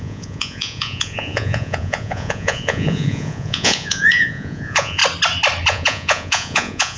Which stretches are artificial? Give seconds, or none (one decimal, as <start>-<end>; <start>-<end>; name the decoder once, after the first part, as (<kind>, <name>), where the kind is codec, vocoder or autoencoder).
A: 0.0-5.0 (vocoder, Vocos); 5.7-7.0